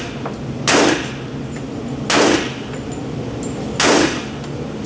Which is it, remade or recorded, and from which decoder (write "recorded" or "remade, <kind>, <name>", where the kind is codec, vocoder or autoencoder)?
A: recorded